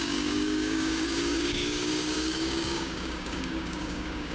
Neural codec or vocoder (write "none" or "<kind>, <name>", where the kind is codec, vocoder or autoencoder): codec, DAC